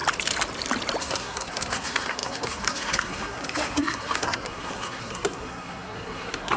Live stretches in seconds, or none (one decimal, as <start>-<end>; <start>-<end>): 0.0-1.0